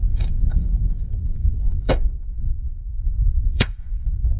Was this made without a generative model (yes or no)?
no